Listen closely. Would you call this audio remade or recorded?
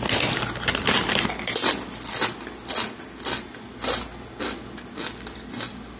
recorded